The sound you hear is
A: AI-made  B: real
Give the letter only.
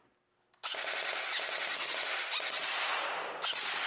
B